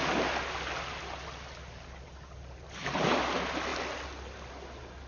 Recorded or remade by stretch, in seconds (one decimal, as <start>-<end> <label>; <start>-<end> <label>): 0.0-5.1 recorded